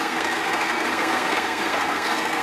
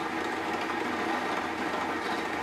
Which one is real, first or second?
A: second